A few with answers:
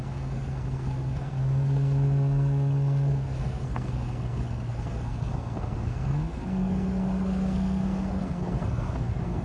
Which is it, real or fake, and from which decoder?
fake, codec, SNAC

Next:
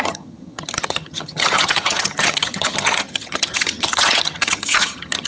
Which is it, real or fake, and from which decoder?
fake, vocoder, HiFi-GAN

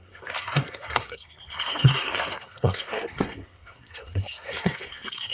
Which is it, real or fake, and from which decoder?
fake, codec, SNAC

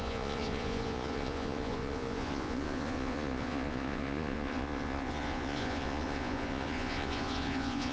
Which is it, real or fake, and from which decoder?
fake, vocoder, Vocos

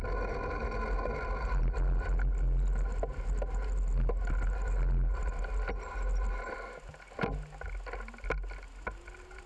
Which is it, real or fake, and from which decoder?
real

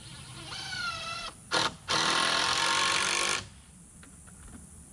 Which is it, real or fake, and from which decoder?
real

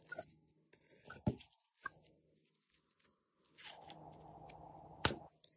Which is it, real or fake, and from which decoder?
real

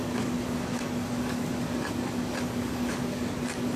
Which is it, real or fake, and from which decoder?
fake, codec, DAC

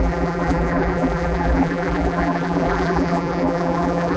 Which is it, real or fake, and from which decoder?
fake, vocoder, BigVGAN v2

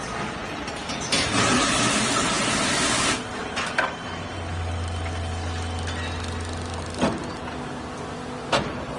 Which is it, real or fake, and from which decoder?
real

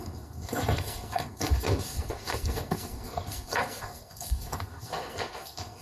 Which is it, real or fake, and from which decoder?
fake, codec, SNAC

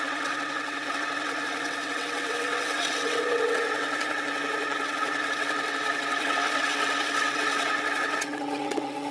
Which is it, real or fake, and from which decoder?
fake, vocoder, WaveNeXt